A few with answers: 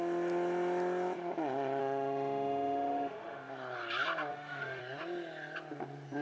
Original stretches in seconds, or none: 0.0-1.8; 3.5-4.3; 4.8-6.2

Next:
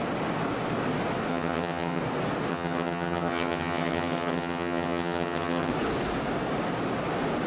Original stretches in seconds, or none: 0.0-1.3; 2.0-2.5; 5.7-7.5

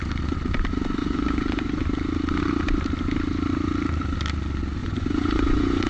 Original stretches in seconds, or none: 0.0-1.0; 1.8-4.8

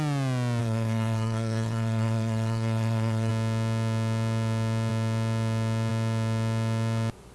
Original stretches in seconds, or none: 0.0-0.6; 3.3-7.3

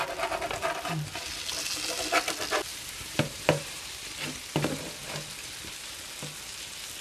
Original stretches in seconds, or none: 0.0-2.7; 3.9-7.0